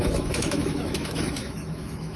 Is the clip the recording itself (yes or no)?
no